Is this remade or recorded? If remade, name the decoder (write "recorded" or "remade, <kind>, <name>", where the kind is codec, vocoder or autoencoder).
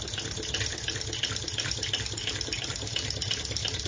recorded